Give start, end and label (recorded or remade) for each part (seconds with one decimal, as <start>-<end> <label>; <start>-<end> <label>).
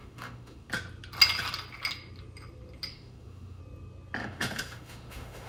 0.0-0.7 remade; 0.7-2.9 recorded; 2.9-3.6 remade; 3.6-4.2 recorded; 4.2-5.5 remade